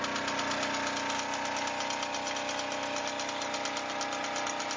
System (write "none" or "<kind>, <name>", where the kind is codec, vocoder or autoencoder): none